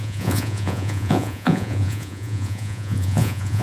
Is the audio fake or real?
fake